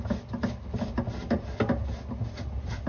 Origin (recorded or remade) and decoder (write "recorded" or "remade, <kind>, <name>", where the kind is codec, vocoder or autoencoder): recorded